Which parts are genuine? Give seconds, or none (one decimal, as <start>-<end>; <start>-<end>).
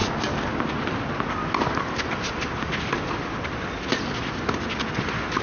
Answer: 0.0-5.4